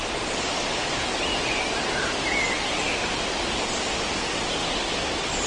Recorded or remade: recorded